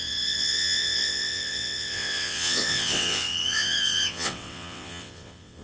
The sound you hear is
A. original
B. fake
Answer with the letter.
B